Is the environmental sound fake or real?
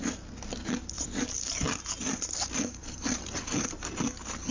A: real